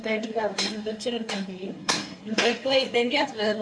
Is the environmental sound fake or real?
fake